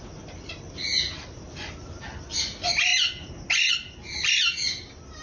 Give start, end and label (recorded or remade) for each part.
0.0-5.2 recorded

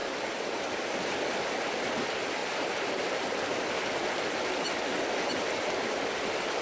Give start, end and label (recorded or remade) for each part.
0.0-6.6 remade

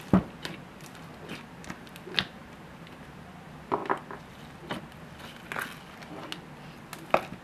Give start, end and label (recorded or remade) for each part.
0.0-2.4 recorded; 2.4-3.0 remade; 3.0-7.4 recorded

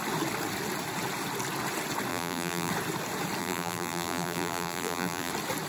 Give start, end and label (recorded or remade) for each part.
0.0-2.1 recorded; 2.1-2.7 remade; 2.7-3.4 recorded; 3.4-5.3 remade; 5.3-5.7 recorded

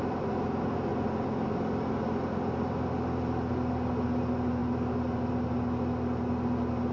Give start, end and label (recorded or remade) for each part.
0.0-6.9 recorded

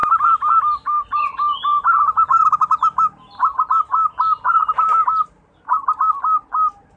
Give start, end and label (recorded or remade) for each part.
0.0-0.6 remade; 0.6-7.0 recorded